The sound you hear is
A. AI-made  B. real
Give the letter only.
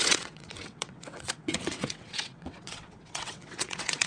A